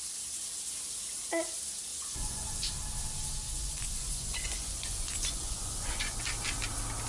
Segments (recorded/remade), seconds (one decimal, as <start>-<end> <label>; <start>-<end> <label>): 0.0-1.9 recorded; 1.9-2.7 remade; 2.7-3.4 recorded; 3.4-6.3 remade; 6.3-7.1 recorded